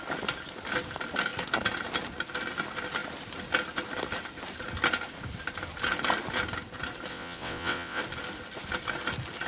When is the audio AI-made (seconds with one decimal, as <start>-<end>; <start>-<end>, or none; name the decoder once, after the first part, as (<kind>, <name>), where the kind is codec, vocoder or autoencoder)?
7.1-8.0 (vocoder, WaveNeXt)